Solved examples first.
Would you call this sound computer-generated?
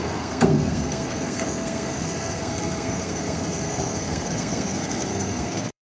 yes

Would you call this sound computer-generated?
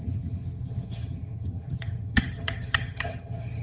yes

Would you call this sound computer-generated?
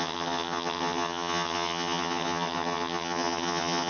yes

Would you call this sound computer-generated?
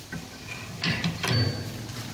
no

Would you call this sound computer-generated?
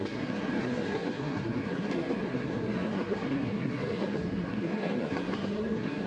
yes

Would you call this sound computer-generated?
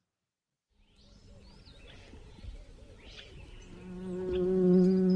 no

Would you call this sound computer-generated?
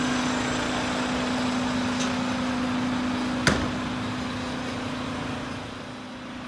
no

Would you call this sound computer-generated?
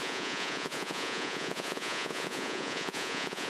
yes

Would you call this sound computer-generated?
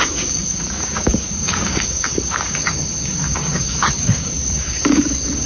yes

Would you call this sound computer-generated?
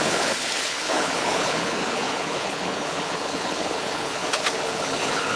yes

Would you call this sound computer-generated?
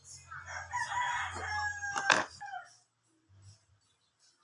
no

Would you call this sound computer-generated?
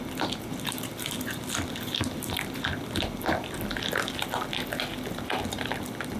no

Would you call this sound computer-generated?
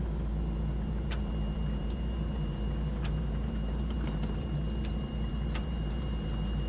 yes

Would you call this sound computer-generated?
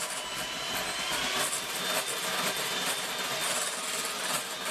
no